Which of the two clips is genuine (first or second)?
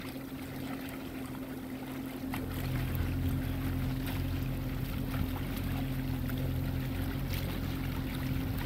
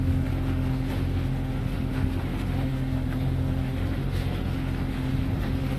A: first